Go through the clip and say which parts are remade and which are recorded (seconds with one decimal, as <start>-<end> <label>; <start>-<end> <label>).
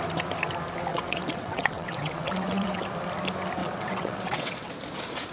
0.0-0.9 recorded; 0.9-2.8 remade; 2.8-3.6 recorded; 3.6-4.7 remade; 4.7-5.3 recorded